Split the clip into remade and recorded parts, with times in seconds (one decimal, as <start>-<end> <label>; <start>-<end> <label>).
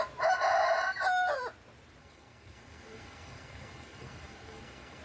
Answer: 0.0-2.0 recorded; 2.0-5.0 remade